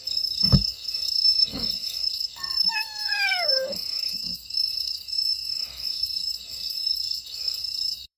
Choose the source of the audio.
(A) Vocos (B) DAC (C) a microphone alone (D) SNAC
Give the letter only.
D